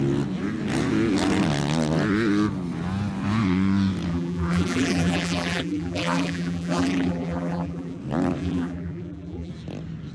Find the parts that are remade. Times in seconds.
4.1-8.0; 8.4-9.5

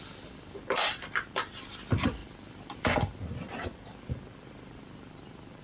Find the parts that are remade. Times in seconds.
0.0-5.6